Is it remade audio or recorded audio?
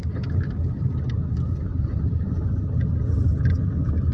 recorded